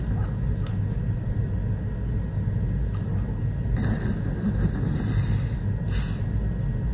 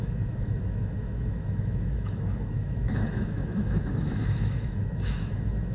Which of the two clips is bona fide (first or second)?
first